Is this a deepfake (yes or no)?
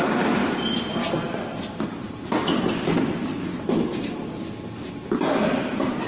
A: yes